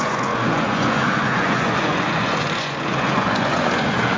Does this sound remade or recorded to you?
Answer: remade